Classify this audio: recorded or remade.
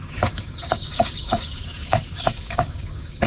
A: remade